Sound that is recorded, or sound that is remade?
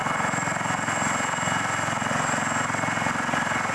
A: recorded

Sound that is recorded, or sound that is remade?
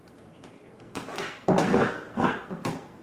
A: remade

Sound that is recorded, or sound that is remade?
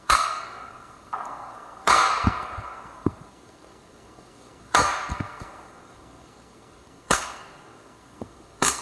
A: remade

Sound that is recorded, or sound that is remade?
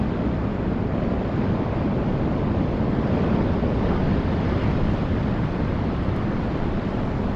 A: recorded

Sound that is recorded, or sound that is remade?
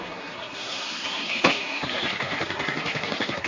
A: remade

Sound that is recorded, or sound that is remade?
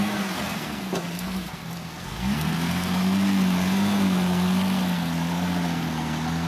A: remade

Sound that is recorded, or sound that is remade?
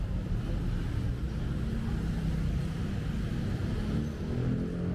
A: recorded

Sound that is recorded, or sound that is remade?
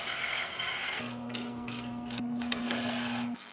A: remade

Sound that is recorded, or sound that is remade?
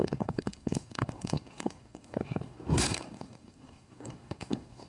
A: remade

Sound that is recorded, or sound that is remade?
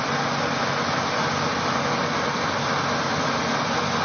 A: recorded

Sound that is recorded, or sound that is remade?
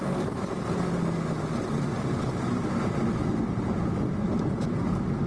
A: recorded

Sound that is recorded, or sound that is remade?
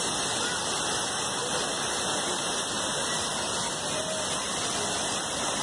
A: recorded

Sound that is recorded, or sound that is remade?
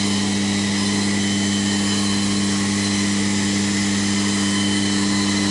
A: recorded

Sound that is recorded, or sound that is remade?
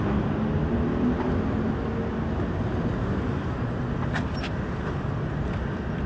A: recorded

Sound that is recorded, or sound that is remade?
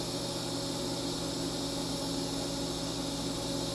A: recorded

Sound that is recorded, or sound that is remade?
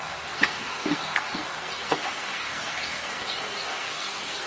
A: remade